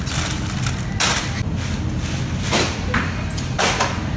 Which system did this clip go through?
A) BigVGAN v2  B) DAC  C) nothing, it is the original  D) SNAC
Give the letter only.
C